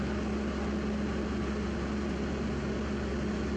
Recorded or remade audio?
recorded